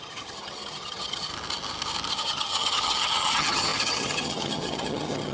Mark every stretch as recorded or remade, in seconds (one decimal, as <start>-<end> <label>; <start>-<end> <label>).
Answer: 0.0-1.3 remade; 1.3-2.1 recorded; 2.1-5.3 remade